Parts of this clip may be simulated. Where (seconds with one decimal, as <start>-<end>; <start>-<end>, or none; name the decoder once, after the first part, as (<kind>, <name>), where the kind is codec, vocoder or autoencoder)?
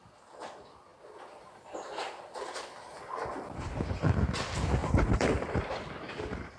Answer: 4.8-5.7 (vocoder, BigVGAN v2)